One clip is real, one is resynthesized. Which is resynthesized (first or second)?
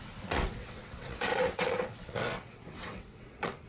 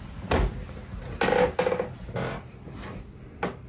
first